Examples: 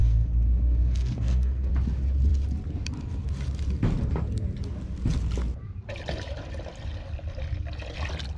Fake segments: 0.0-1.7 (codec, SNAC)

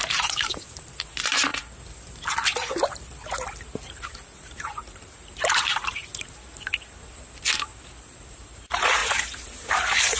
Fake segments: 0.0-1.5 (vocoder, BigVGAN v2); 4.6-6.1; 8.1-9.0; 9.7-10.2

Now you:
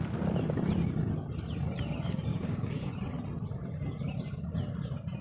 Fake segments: 2.3-2.9 (codec, DAC)

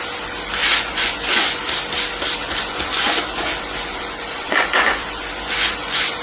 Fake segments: 0.6-1.6 (vocoder, Vocos); 2.4-6.2